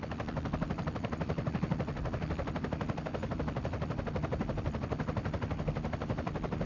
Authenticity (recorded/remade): remade